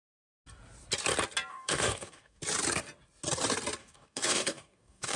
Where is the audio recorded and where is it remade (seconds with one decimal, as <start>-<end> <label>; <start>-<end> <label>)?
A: 0.0-1.5 recorded; 1.5-2.4 remade; 2.4-3.8 recorded; 3.8-5.2 remade